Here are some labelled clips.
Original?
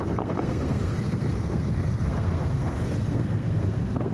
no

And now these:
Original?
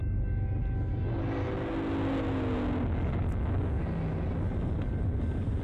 yes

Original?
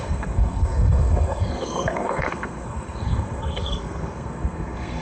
no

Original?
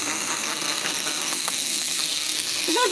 no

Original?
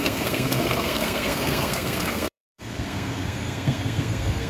no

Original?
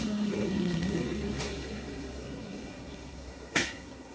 no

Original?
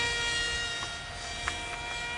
yes